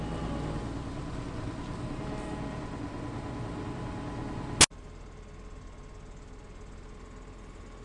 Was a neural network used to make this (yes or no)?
no